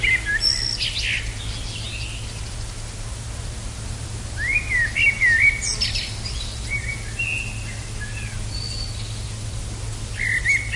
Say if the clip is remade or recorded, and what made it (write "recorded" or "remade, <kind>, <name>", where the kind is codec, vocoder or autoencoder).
recorded